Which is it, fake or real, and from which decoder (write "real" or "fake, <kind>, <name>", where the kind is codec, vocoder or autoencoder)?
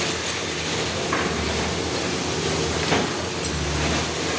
real